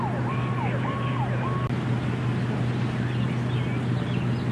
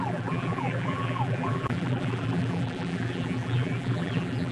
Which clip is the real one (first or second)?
first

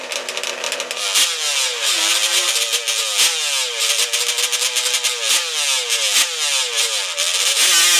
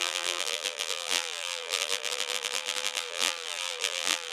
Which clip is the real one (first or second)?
first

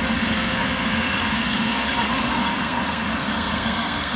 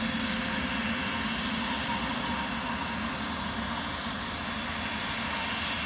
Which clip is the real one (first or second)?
second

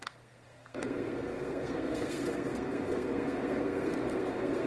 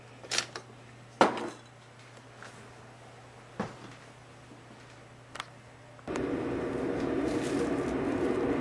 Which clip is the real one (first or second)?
second